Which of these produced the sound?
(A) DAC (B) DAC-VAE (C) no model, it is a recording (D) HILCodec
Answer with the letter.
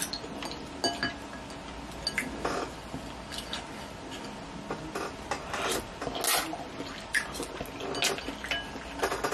C